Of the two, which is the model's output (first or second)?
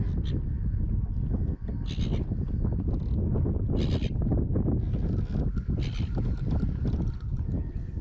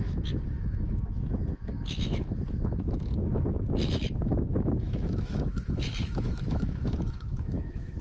second